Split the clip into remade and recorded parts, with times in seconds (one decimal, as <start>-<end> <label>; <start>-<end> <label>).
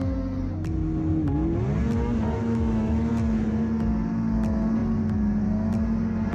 0.0-2.4 recorded; 2.4-3.1 remade; 3.1-6.3 recorded